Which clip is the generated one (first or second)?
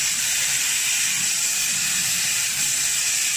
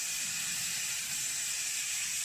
first